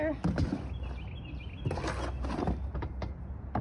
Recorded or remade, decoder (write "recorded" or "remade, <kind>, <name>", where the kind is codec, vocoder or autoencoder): recorded